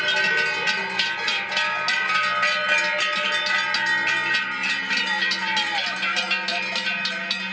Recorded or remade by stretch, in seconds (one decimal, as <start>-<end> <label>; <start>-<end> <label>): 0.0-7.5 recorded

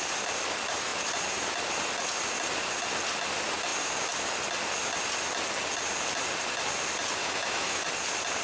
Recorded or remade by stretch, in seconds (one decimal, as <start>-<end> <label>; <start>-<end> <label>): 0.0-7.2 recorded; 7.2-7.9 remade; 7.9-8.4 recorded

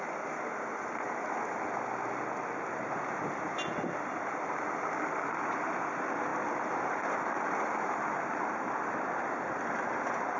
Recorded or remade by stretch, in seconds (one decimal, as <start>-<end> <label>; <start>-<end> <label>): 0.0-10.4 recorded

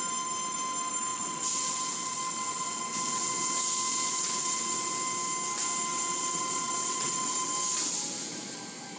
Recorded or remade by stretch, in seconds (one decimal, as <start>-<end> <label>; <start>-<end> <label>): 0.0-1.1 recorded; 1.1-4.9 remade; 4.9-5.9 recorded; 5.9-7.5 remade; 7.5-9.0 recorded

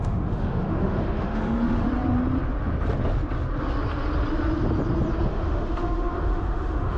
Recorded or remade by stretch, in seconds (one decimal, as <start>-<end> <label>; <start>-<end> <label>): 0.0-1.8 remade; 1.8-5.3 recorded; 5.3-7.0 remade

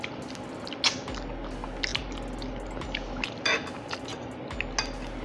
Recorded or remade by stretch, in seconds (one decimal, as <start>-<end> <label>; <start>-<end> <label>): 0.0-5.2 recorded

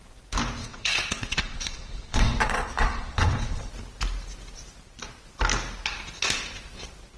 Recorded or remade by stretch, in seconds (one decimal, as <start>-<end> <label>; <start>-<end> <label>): 0.0-0.6 recorded; 0.6-3.7 remade; 3.7-7.2 recorded